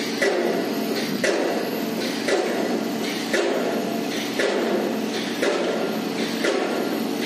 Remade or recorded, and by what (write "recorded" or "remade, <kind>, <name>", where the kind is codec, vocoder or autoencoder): recorded